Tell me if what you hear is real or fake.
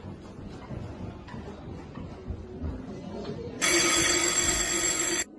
fake